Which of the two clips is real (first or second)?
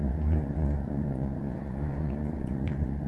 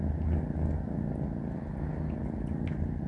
second